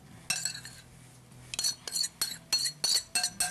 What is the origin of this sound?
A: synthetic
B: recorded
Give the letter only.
B